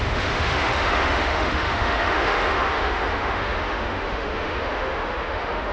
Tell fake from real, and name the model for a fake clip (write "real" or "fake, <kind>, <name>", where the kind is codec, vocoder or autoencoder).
fake, autoencoder, DAC-VAE